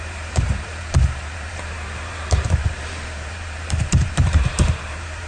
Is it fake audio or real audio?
fake